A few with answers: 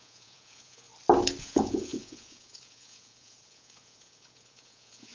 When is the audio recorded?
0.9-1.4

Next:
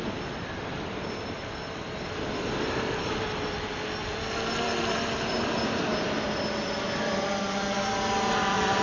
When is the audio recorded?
0.0-8.8